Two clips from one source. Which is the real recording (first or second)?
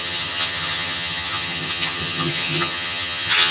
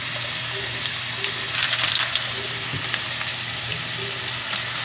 second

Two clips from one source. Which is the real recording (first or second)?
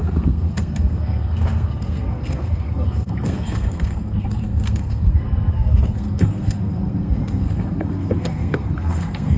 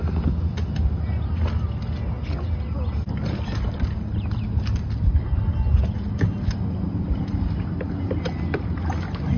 second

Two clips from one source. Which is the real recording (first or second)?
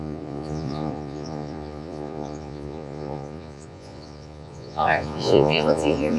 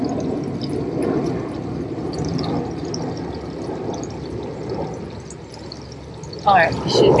second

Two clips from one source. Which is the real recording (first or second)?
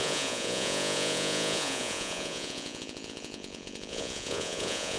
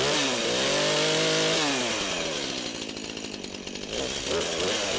second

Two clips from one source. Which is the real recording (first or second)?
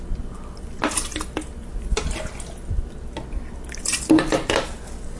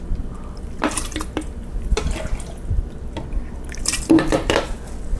first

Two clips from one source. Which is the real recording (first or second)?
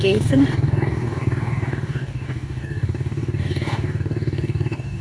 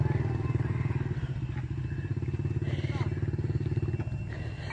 second